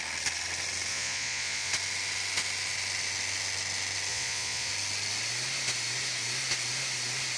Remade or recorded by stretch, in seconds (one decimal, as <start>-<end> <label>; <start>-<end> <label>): 0.0-0.9 recorded; 0.9-1.7 remade; 1.7-4.1 recorded; 4.1-4.7 remade; 4.7-7.4 recorded